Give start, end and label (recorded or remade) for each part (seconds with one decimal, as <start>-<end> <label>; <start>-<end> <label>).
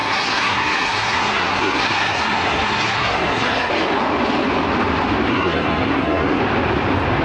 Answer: 0.0-3.7 remade; 3.7-5.3 recorded; 5.3-6.4 remade; 6.4-7.2 recorded